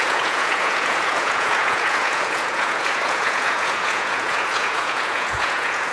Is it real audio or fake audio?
fake